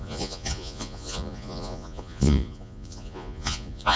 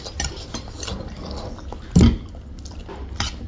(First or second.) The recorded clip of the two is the second